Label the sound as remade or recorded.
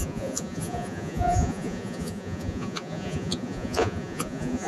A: remade